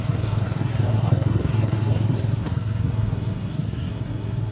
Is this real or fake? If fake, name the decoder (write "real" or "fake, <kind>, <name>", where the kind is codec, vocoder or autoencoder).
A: fake, codec, SNAC